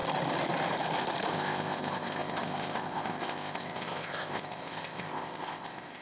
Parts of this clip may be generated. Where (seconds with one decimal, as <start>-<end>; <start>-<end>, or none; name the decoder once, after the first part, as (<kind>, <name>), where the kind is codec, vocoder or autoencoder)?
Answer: 1.3-6.0 (codec, ZipCodec)